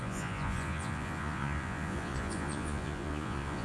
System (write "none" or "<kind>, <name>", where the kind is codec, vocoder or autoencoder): vocoder, Vocos